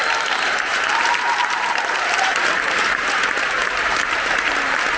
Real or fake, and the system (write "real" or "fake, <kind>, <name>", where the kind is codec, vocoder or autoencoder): fake, vocoder, BigVGAN v2